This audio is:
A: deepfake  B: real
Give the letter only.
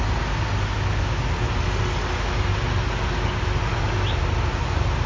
B